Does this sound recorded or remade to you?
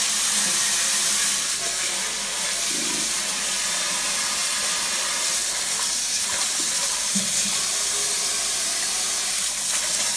recorded